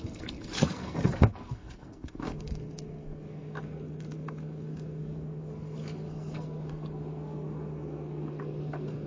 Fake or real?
fake